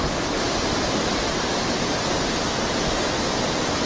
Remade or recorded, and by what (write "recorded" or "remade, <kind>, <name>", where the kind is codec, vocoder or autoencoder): recorded